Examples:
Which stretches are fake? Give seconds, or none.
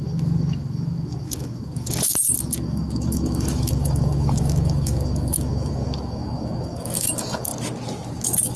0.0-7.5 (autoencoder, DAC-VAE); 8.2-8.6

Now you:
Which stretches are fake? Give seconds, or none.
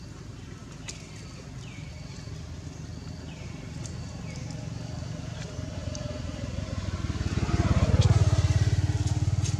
none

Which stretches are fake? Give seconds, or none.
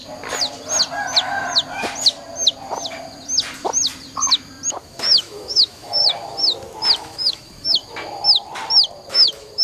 4.8-6.0 (autoencoder, DAC-VAE); 7.0-7.8; 9.1-9.6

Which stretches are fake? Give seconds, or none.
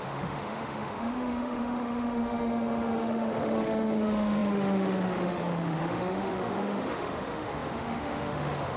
0.0-8.8 (autoencoder, DAC-VAE)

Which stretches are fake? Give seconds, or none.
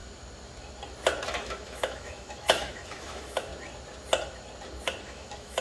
1.3-3.5 (autoencoder, DAC-VAE); 5.0-5.6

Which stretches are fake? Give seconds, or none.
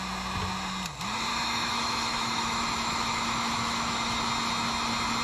1.3-4.2 (autoencoder, DAC-VAE)